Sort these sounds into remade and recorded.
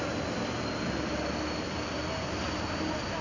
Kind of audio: recorded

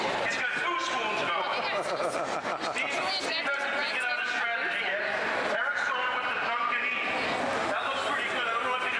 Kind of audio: recorded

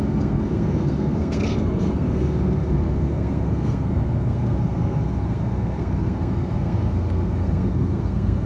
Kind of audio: remade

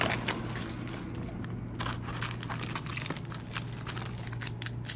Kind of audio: recorded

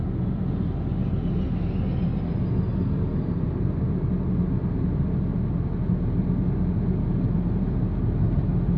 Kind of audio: recorded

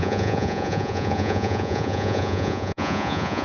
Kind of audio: remade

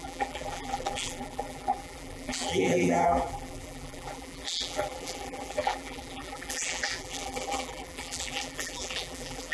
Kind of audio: remade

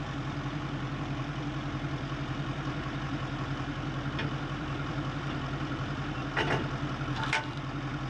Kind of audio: remade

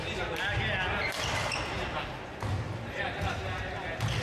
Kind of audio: recorded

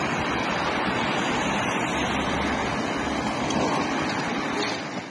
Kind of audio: recorded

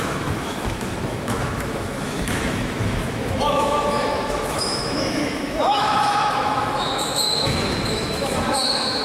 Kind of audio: remade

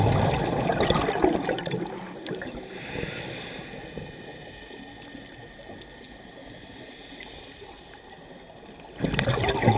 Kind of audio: recorded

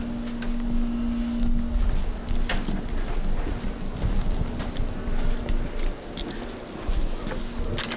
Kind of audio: recorded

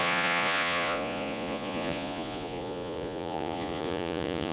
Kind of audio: remade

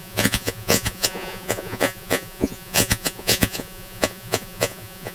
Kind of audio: remade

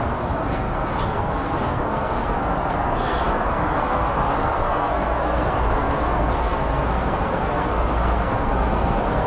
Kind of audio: remade